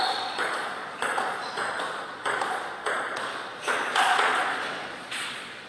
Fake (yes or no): yes